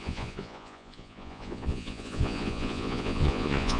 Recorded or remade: remade